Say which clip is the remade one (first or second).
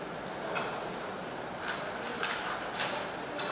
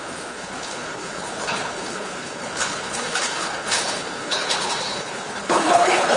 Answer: second